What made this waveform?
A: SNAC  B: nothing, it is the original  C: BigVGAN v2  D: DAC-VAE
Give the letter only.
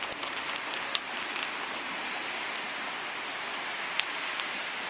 B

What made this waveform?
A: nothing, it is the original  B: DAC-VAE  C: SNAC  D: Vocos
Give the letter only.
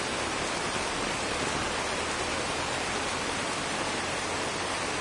A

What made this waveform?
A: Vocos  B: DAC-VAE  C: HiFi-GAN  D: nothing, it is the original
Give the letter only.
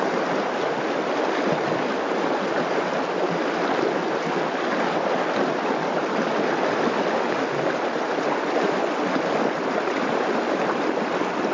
D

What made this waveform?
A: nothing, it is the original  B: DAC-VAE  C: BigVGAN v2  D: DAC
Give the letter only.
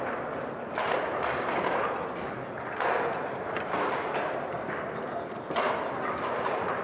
A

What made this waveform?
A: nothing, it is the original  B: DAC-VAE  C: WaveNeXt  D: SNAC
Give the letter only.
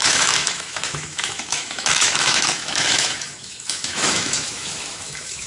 B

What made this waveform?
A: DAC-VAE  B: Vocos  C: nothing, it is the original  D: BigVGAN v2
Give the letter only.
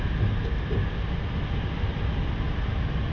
C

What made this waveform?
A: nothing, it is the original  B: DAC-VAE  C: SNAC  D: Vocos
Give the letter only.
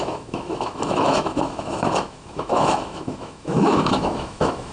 B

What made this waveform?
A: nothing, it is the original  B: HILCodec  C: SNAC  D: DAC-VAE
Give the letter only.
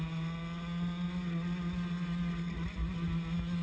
A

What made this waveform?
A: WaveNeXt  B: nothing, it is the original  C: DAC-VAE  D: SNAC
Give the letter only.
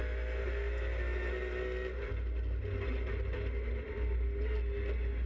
B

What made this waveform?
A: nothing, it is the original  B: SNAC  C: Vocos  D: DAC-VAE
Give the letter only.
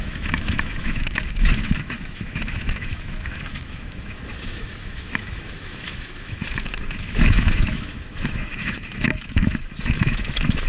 D